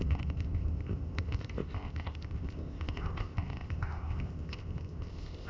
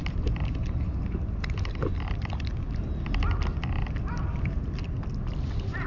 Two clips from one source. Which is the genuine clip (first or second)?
second